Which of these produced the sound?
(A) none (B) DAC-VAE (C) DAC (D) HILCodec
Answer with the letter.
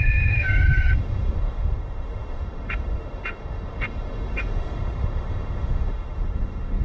B